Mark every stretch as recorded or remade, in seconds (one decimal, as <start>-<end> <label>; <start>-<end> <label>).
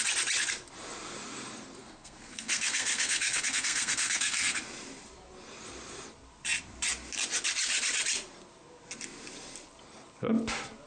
0.0-1.8 recorded; 1.8-4.6 remade; 4.6-10.9 recorded